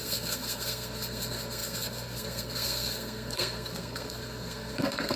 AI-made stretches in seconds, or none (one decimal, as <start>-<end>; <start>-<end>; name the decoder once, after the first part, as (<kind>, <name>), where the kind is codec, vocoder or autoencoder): 0.0-5.2 (codec, SNAC)